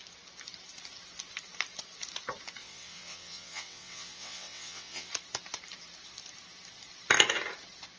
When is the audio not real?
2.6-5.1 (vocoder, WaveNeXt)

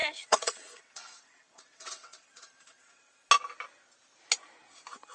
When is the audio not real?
0.0-3.1 (vocoder, WaveNeXt)

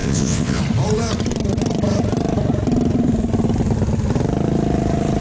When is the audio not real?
0.0-0.6 (vocoder, WaveNeXt)

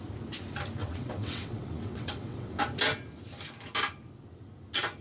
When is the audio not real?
0.8-2.6 (vocoder, WaveNeXt)

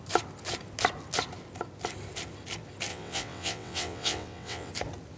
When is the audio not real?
2.9-4.7 (vocoder, WaveNeXt)

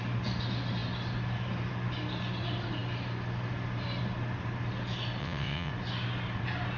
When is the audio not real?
5.2-5.7 (vocoder, WaveNeXt)

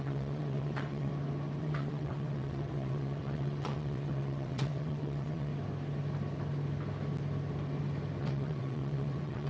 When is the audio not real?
0.0-1.1 (vocoder, WaveNeXt); 1.6-5.5; 8.2-9.5